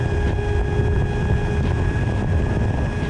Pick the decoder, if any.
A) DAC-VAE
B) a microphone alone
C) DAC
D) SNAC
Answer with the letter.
B